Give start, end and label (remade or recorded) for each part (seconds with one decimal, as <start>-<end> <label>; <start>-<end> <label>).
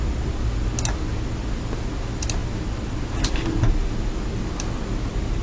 0.0-5.4 recorded